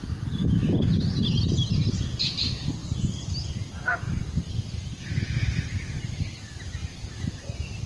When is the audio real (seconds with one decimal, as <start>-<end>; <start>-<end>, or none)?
0.0-2.8; 3.3-3.9; 5.4-6.8; 7.4-7.9

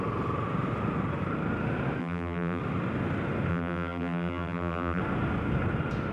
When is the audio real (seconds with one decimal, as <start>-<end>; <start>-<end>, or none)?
0.0-2.0; 2.6-3.5; 5.0-6.1